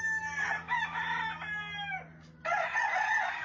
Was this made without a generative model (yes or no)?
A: yes